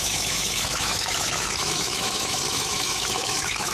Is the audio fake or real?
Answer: fake